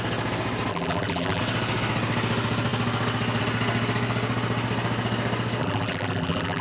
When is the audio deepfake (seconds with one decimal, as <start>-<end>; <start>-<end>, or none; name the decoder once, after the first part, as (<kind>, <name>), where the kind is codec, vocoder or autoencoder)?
0.7-1.4 (vocoder, BigVGAN v2); 5.6-6.6